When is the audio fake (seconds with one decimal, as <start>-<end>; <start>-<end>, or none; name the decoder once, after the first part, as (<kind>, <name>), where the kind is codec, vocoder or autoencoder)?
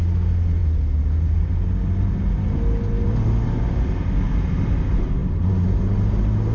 none